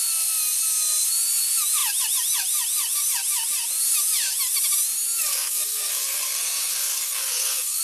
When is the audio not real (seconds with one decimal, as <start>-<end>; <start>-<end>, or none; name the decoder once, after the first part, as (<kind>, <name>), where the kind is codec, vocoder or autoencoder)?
5.3-7.8 (codec, SNAC)